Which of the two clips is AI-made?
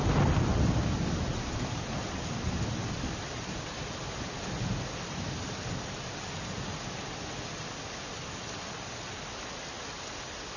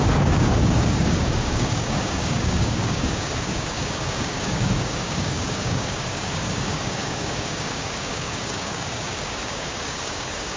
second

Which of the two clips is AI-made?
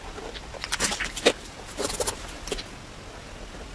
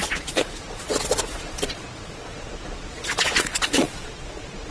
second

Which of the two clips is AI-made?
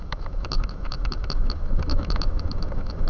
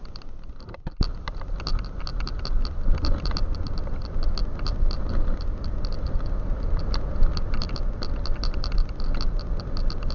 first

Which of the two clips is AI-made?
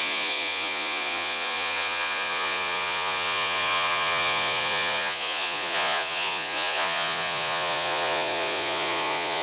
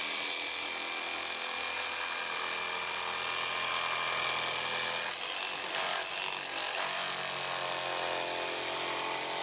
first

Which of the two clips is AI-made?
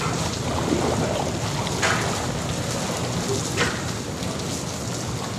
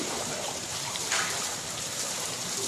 second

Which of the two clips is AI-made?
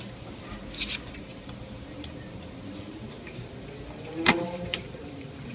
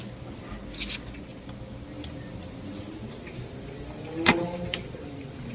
first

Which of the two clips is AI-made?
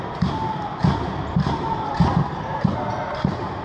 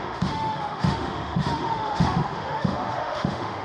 second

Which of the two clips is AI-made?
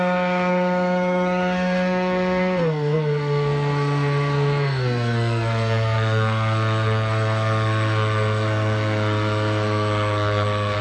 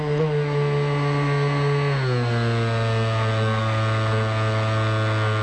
first